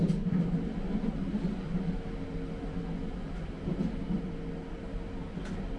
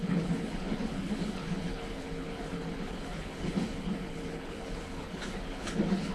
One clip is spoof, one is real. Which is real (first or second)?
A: first